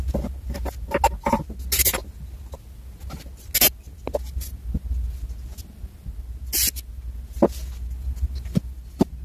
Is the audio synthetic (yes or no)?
no